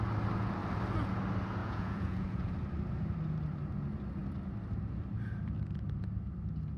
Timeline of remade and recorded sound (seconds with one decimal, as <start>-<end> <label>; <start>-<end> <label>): 0.0-1.6 recorded; 1.6-2.5 remade; 2.5-6.8 recorded